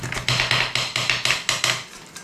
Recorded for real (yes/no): yes